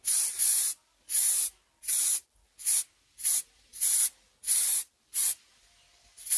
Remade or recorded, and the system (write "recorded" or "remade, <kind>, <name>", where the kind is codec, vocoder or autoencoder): recorded